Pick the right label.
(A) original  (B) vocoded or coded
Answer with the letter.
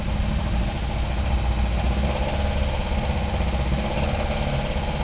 A